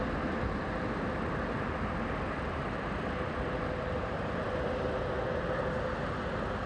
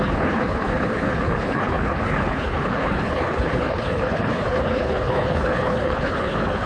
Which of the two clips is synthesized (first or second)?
second